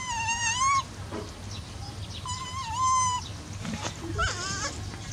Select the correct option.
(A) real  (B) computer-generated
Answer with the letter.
A